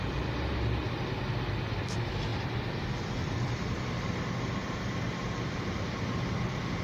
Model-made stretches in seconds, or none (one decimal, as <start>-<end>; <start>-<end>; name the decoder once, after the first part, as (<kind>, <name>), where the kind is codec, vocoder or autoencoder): 2.3-5.9 (vocoder, BigVGAN v2)